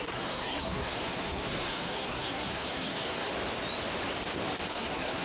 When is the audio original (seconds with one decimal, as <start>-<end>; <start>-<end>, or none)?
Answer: 3.3-4.7